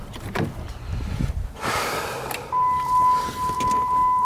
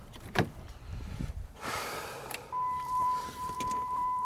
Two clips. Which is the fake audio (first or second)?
second